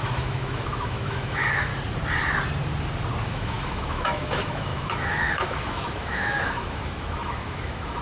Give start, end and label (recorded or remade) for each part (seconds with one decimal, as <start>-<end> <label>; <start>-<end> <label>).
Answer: 0.0-1.7 remade; 1.7-3.2 recorded; 3.2-8.0 remade